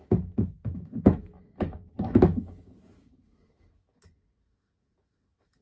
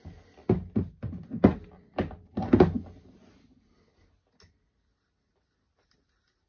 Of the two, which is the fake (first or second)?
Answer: first